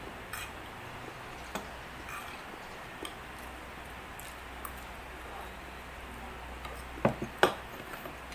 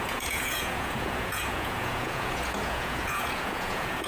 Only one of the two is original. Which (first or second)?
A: first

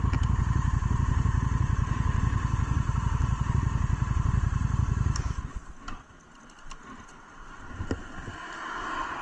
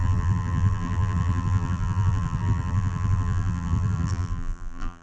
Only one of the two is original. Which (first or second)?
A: first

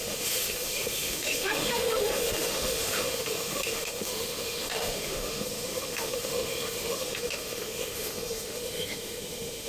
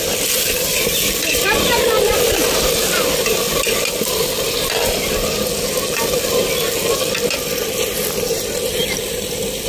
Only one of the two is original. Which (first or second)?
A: second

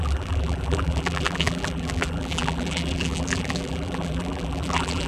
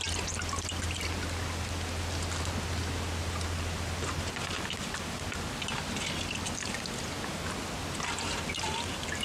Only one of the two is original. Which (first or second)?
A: second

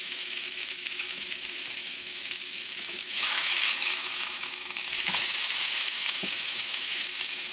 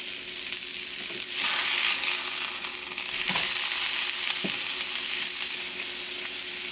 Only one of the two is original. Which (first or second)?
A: second